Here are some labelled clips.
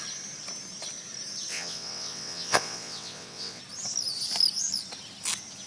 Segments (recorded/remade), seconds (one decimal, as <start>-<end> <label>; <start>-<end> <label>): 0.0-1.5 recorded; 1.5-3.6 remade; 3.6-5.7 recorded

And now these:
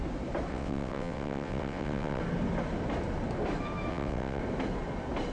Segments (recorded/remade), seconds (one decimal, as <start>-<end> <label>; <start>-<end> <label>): 0.0-0.5 recorded; 0.5-2.2 remade; 2.2-3.9 recorded; 3.9-4.4 remade; 4.4-5.3 recorded

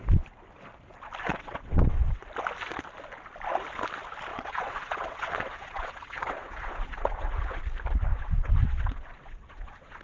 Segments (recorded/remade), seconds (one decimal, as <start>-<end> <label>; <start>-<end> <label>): 0.0-1.3 recorded; 1.3-2.2 remade; 2.2-4.3 recorded; 4.3-7.6 remade; 7.6-8.1 recorded; 8.1-10.0 remade

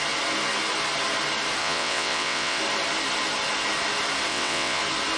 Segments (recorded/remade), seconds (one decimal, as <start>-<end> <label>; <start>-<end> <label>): 0.0-1.6 recorded; 1.6-2.6 remade; 2.6-4.3 recorded; 4.3-4.8 remade; 4.8-5.2 recorded

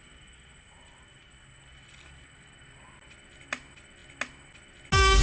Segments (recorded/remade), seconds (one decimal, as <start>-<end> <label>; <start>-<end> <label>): 0.0-5.2 recorded

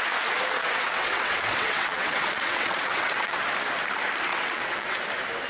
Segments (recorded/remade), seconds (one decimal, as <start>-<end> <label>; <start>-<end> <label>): 0.0-0.6 recorded; 0.6-3.4 remade; 3.4-4.3 recorded; 4.3-5.0 remade; 5.0-5.5 recorded